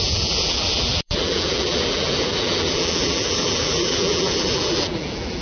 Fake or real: fake